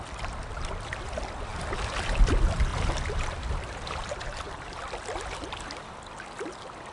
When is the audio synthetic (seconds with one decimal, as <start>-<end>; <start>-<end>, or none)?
2.7-4.8